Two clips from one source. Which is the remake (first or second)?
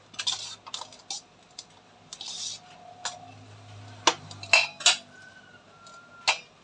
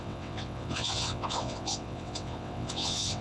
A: second